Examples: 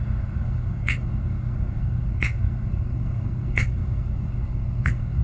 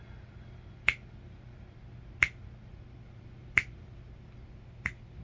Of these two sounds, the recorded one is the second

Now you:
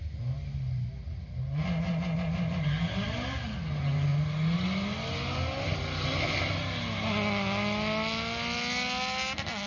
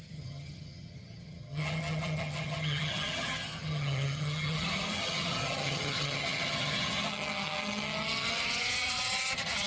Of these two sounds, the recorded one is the first